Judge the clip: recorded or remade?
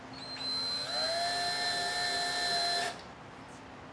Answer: recorded